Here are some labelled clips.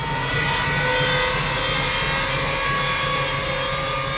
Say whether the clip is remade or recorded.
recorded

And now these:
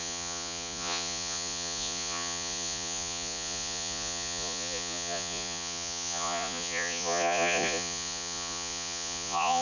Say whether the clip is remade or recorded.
remade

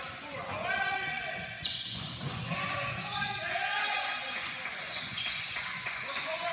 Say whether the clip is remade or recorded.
remade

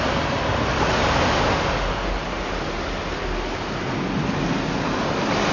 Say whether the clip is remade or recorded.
recorded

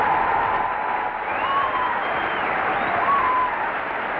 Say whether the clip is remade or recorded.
recorded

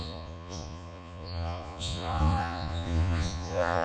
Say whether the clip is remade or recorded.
remade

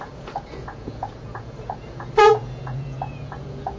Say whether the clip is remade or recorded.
remade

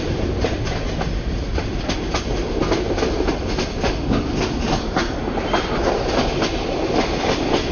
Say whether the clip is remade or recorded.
recorded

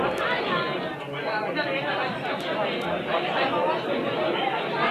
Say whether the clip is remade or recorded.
recorded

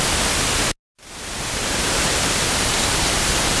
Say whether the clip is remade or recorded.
recorded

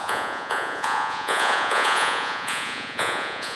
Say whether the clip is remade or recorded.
remade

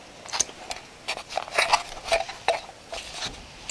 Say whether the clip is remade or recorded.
recorded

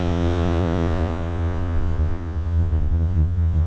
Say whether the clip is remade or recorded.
remade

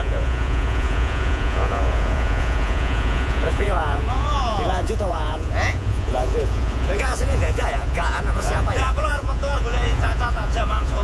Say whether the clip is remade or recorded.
remade